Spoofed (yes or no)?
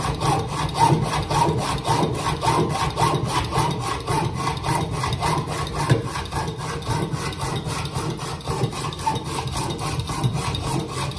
no